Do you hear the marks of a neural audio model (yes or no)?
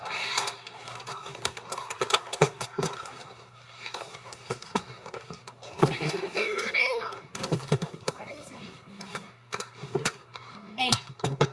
yes